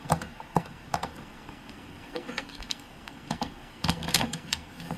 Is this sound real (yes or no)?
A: no